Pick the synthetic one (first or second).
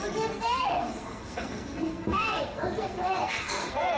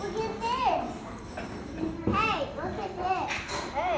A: first